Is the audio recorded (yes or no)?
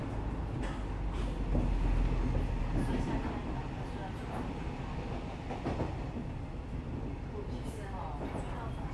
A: yes